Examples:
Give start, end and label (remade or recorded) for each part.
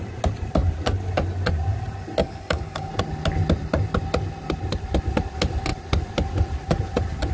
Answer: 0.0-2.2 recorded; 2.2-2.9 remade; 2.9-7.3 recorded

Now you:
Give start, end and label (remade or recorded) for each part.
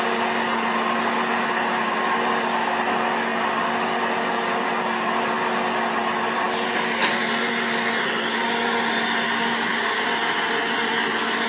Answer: 0.0-11.5 recorded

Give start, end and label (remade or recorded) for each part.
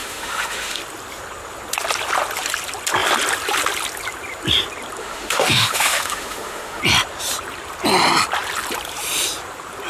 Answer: 0.0-0.8 remade; 0.8-5.0 recorded; 5.0-6.8 remade; 6.8-9.9 recorded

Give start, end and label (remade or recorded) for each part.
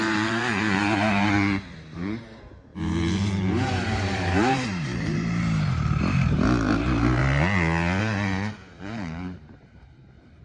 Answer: 0.0-2.7 remade; 2.7-3.2 recorded; 3.2-7.2 remade; 7.2-8.0 recorded; 8.0-10.4 remade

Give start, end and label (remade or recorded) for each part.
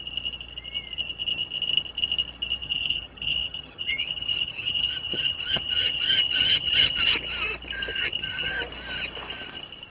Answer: 0.0-2.6 recorded; 2.6-7.1 remade; 7.1-7.9 recorded; 7.9-8.5 remade; 8.5-9.9 recorded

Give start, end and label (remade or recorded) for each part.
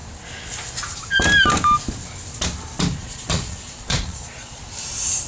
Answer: 0.0-3.0 recorded; 3.0-4.6 remade; 4.6-5.3 recorded